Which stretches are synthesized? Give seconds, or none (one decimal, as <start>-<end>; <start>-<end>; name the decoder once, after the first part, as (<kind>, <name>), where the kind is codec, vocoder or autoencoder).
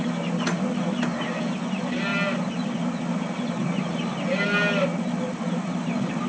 none